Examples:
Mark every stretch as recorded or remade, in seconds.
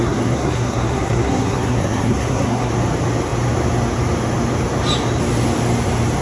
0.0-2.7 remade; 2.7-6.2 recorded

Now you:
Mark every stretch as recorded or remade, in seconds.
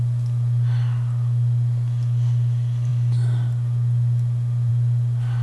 0.0-5.4 recorded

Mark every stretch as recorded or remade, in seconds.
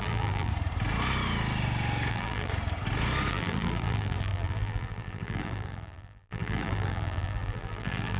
0.0-0.5 remade; 0.5-2.1 recorded; 2.1-2.5 remade; 2.5-3.3 recorded; 3.3-8.2 remade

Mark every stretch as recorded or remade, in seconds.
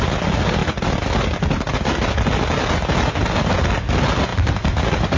0.0-5.2 recorded